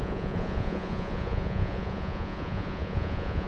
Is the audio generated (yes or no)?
yes